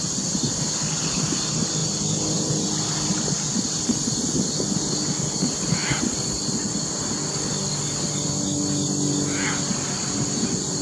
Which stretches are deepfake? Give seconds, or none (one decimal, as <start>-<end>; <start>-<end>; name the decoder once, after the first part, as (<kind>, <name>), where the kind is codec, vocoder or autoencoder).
none